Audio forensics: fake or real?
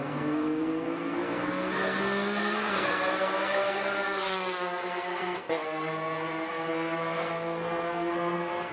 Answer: fake